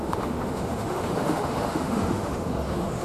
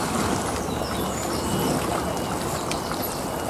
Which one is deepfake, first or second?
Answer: first